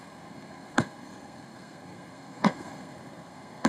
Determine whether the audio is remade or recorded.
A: remade